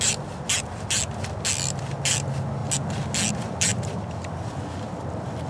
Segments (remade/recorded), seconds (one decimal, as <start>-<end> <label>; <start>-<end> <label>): 0.0-3.7 recorded; 3.7-5.1 remade; 5.1-5.5 recorded